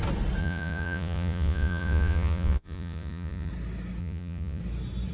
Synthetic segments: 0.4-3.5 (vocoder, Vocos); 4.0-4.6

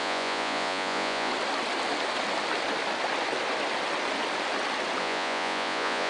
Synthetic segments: 0.0-1.3 (vocoder, Vocos); 5.0-6.1

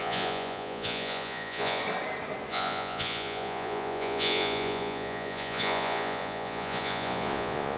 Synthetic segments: 0.0-1.8 (vocoder, Vocos); 2.5-7.8

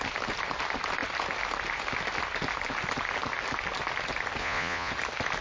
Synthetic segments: 4.4-4.9 (vocoder, Vocos)